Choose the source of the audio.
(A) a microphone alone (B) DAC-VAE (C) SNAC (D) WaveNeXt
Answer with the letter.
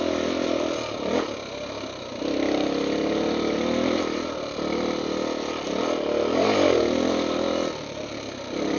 A